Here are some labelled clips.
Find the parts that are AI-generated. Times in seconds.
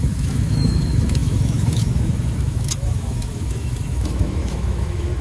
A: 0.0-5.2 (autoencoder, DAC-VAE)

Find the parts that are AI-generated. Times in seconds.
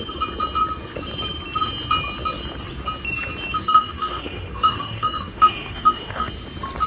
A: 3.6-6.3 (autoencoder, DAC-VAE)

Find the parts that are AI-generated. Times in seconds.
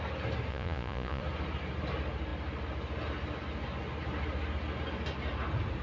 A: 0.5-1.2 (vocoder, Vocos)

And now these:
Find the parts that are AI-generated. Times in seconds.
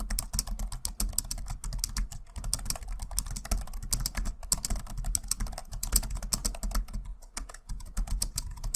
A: 5.6-6.2 (vocoder, Vocos); 7.1-8.8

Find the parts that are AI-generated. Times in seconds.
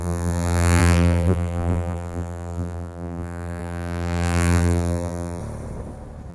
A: 0.0-5.4 (vocoder, BigVGAN v2)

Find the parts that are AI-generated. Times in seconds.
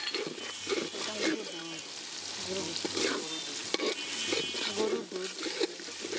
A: none